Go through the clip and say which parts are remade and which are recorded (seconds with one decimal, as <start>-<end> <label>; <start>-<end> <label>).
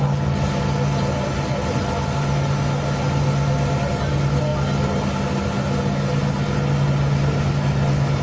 0.0-8.2 recorded